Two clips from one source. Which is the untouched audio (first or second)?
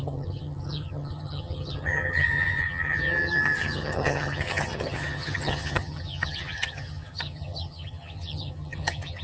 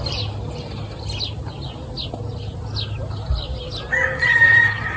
second